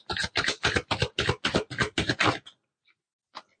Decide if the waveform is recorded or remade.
recorded